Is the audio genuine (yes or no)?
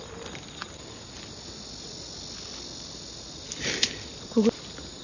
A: yes